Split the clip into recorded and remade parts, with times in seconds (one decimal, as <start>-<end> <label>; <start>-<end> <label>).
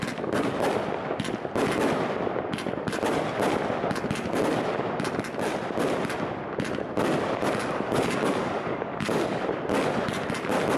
0.0-7.6 recorded; 7.6-9.4 remade; 9.4-10.8 recorded